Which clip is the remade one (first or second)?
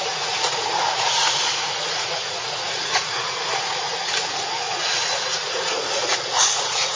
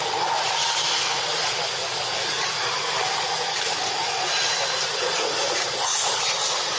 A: first